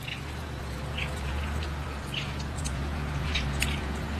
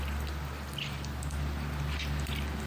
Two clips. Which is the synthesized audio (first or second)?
first